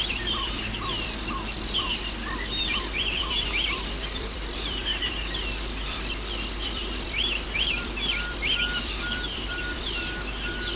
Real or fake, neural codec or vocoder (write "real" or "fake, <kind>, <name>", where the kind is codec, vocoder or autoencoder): fake, vocoder, BigVGAN v2